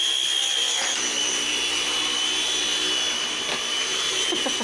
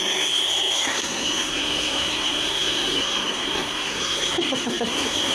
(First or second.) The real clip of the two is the first